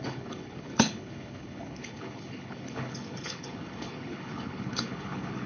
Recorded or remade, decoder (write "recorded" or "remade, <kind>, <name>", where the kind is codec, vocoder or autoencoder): remade, codec, HILCodec